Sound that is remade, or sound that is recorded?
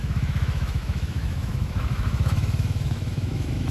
remade